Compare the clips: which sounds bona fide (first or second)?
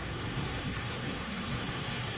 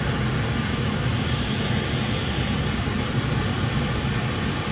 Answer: second